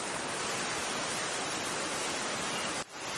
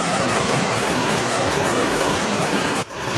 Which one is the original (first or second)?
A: first